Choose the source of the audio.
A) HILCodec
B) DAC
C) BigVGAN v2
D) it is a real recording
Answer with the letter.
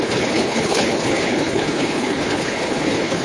A